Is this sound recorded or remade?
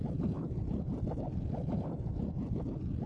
recorded